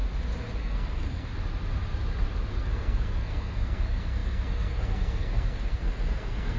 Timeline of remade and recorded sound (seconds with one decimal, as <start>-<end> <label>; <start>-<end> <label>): 0.0-0.6 recorded; 0.6-1.3 remade; 1.3-2.5 recorded; 2.5-6.6 remade